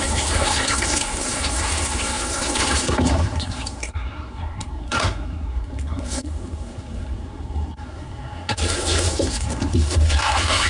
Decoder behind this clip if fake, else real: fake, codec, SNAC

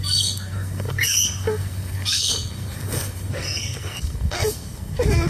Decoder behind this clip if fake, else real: fake, codec, SNAC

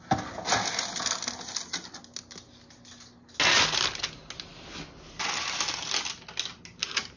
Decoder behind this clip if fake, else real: real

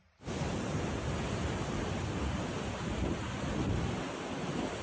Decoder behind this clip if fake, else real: real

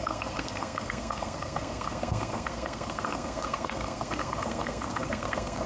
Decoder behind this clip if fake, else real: fake, codec, SNAC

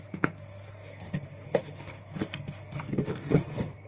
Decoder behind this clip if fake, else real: fake, codec, SNAC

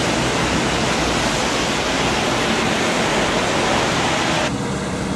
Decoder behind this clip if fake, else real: real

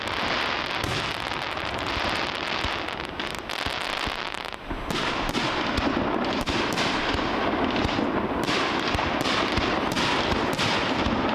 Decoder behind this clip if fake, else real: real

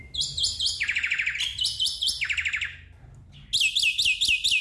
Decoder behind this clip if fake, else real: real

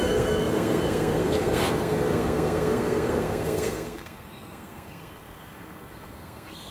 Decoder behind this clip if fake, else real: fake, codec, SNAC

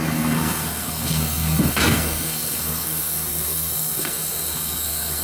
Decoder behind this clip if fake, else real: fake, codec, SNAC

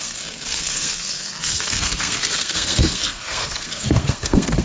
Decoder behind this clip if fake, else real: fake, codec, SNAC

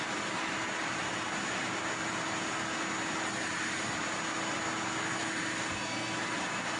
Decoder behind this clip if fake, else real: real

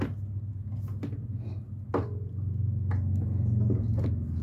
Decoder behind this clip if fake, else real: real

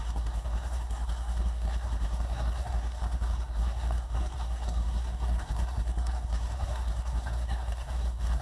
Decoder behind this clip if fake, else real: fake, codec, SNAC